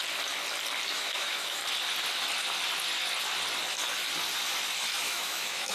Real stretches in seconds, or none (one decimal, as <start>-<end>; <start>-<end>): 0.0-0.9; 1.6-5.0